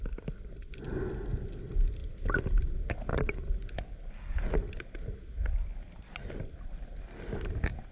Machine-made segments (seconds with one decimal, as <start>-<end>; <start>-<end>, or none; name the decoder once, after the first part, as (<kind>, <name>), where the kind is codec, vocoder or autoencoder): none